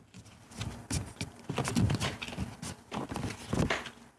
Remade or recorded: recorded